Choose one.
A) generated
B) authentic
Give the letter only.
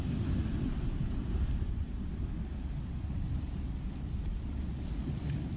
B